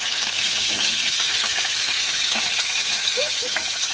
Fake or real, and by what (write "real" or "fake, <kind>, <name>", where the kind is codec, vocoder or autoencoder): fake, autoencoder, DAC-VAE